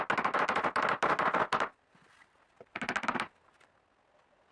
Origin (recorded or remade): recorded